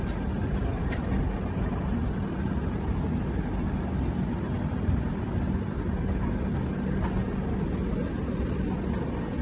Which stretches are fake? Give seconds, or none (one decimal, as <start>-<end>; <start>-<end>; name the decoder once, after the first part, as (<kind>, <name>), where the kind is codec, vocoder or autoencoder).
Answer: 0.4-1.2 (vocoder, BigVGAN v2)